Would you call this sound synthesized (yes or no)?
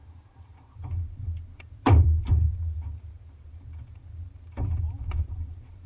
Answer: yes